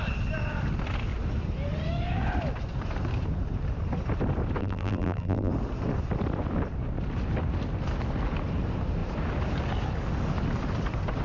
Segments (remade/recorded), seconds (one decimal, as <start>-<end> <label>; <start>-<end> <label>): 0.0-4.6 recorded; 4.6-5.5 remade; 5.5-11.2 recorded